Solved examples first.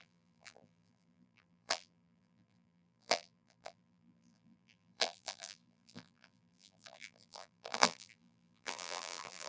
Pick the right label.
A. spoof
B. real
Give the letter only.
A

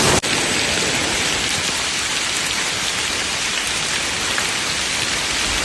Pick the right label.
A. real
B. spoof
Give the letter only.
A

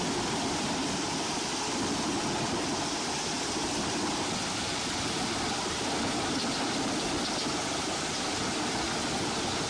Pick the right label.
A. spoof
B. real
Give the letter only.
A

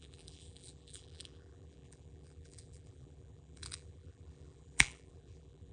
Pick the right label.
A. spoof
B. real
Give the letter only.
A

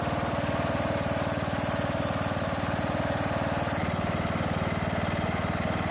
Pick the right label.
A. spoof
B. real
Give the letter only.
B